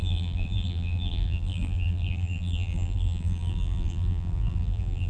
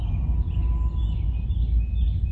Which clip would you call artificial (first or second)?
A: first